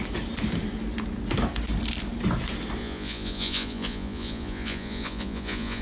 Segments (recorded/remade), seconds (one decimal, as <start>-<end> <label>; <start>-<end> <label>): 0.0-2.8 recorded; 2.8-5.8 remade